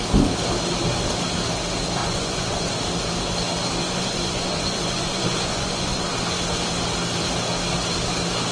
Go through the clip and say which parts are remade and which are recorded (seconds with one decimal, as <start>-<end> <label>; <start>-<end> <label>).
0.0-2.0 recorded; 2.0-2.7 remade; 2.7-3.8 recorded; 3.8-6.1 remade; 6.1-8.5 recorded